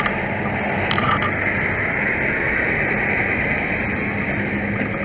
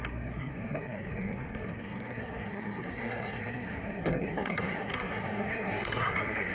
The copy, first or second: second